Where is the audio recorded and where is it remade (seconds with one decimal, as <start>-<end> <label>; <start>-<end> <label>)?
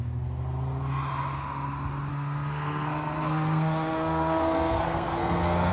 0.0-2.1 recorded; 2.1-5.7 remade